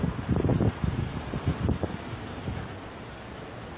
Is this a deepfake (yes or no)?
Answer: yes